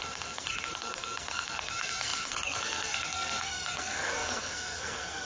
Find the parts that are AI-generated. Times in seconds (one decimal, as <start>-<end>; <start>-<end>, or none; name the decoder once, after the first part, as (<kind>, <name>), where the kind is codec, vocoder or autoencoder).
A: 0.0-5.2 (codec, SNAC)

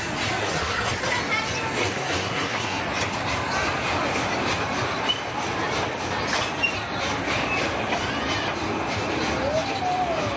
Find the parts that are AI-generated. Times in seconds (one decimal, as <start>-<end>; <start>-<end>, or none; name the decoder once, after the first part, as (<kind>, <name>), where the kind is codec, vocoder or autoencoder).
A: 0.4-1.0 (codec, SNAC); 1.8-2.8

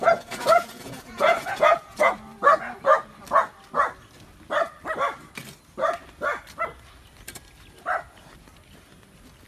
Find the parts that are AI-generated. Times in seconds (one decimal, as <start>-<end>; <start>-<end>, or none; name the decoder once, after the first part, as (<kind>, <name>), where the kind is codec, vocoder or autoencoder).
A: 0.0-2.1 (vocoder, Vocos)

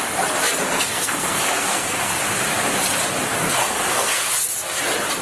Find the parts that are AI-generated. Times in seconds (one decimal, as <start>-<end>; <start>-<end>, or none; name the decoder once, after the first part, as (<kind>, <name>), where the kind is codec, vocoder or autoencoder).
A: 0.7-2.2 (codec, SNAC); 3.4-4.3

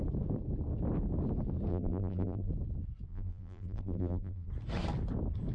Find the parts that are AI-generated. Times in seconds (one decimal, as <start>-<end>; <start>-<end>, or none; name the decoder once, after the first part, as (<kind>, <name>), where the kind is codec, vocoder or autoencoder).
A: 1.7-2.5 (vocoder, BigVGAN v2); 3.1-4.5